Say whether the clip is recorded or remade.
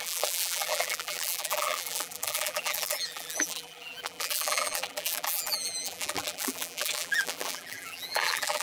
remade